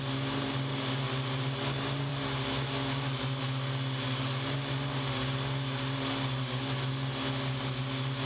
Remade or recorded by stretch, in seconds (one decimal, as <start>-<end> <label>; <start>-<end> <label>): 0.0-8.3 recorded